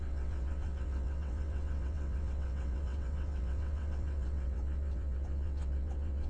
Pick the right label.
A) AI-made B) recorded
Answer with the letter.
A